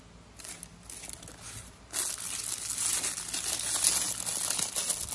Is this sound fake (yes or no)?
no